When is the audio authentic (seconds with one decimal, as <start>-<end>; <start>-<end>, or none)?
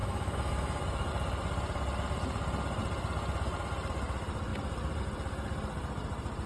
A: 1.1-6.5